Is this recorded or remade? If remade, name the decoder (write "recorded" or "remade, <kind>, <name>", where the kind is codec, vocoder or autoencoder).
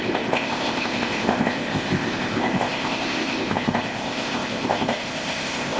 remade, codec, ZipCodec